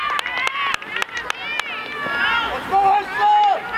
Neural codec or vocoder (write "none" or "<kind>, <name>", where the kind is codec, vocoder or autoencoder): none